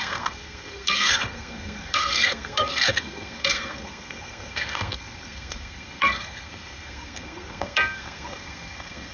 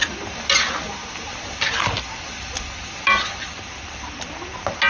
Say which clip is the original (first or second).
second